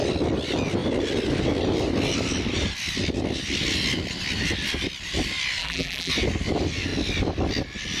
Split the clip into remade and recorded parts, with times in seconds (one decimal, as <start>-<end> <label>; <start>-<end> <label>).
0.0-5.6 recorded; 5.6-6.1 remade; 6.1-8.0 recorded